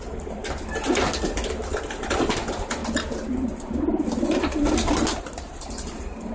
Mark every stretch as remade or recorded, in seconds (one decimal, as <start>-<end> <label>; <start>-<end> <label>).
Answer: 0.0-0.4 remade; 0.4-1.2 recorded; 1.2-2.8 remade; 2.8-4.9 recorded; 4.9-6.3 remade